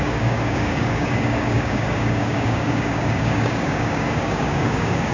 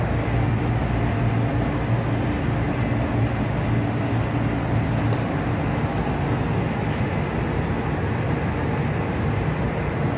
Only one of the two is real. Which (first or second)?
second